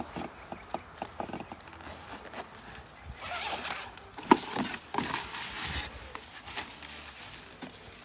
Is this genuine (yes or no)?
yes